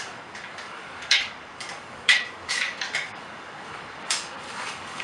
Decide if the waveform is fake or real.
fake